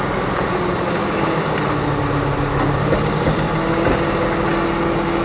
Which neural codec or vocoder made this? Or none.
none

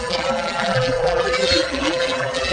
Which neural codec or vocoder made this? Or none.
vocoder, BigVGAN v2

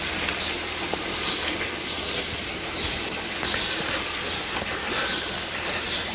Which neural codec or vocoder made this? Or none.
none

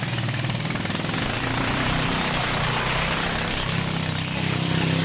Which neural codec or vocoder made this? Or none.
vocoder, BigVGAN v2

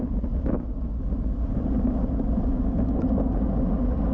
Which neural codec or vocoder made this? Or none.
none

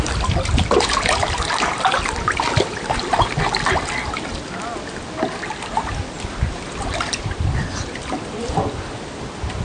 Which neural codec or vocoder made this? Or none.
none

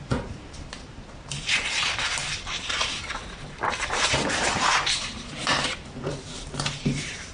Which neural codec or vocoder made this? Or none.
vocoder, BigVGAN v2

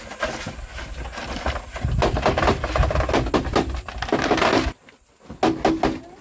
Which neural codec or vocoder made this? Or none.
none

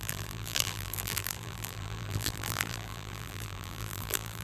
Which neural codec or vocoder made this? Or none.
vocoder, BigVGAN v2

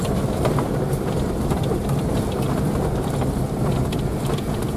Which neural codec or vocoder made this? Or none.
vocoder, BigVGAN v2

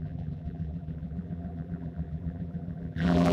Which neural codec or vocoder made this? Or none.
vocoder, BigVGAN v2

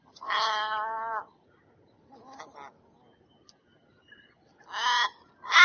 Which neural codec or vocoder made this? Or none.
none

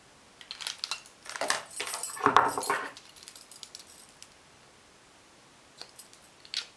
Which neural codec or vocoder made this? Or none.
none